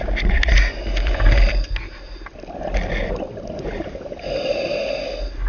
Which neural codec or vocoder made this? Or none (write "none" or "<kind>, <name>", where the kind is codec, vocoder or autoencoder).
none